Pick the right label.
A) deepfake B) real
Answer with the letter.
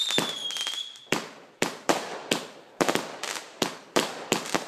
A